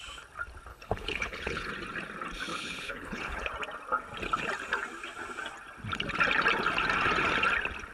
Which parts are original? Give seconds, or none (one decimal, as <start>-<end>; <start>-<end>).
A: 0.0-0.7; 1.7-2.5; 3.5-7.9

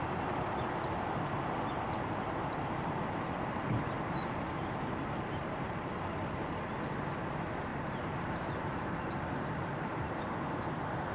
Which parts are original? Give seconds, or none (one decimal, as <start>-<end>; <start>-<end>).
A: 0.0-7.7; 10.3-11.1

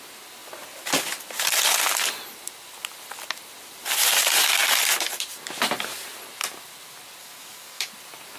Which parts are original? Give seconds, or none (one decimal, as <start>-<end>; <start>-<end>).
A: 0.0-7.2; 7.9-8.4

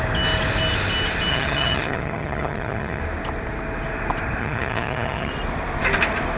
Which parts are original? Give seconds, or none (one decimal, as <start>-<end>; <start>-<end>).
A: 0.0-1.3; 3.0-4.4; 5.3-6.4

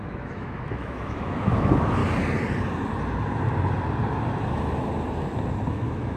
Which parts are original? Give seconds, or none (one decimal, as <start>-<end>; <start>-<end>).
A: 2.0-5.7